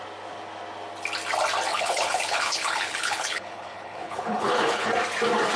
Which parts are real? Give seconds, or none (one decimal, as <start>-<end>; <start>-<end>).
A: 0.0-1.7; 4.9-5.6